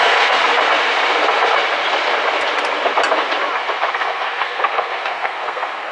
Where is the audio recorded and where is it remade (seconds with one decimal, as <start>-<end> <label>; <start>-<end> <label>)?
0.0-0.4 remade; 0.4-3.9 recorded; 3.9-5.9 remade